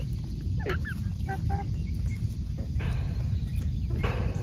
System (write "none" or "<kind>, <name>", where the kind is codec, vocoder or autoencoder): none